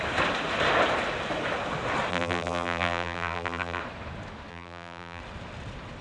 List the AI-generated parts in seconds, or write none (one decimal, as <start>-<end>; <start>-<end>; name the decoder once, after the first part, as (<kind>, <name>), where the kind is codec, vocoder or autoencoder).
2.1-3.8 (vocoder, BigVGAN v2); 4.5-5.2